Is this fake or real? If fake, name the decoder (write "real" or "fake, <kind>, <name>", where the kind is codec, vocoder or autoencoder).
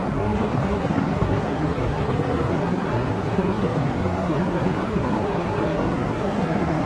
fake, codec, SNAC